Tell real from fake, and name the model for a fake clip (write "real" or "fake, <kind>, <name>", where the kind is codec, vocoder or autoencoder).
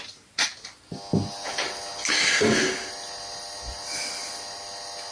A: real